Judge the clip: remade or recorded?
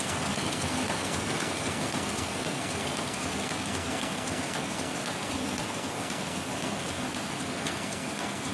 remade